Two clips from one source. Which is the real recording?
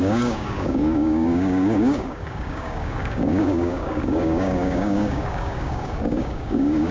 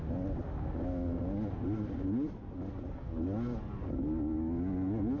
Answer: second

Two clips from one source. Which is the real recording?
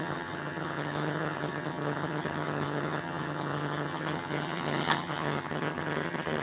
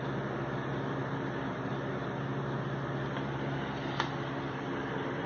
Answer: second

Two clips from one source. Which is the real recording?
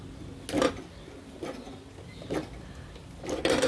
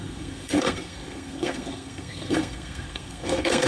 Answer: first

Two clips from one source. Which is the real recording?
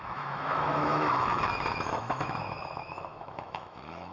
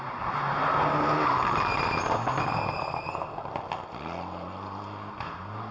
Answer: second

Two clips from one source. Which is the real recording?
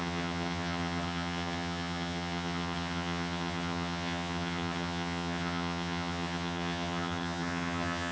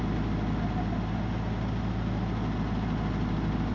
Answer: second